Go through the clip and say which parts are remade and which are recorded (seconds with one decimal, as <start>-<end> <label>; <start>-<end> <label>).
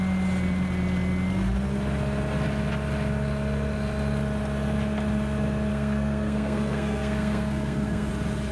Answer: 0.0-5.7 recorded; 5.7-8.1 remade; 8.1-8.5 recorded